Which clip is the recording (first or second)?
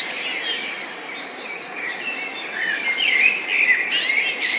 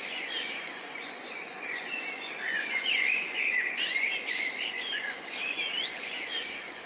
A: first